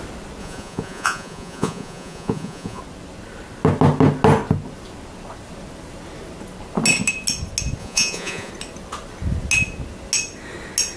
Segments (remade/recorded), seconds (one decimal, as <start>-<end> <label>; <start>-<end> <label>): 0.0-0.4 recorded; 0.4-2.8 remade; 2.8-7.8 recorded; 7.8-8.5 remade; 8.5-11.0 recorded